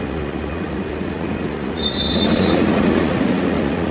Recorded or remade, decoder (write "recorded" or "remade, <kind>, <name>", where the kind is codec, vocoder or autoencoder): remade, vocoder, Vocos